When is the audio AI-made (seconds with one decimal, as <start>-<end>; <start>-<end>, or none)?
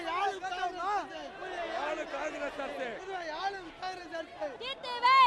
none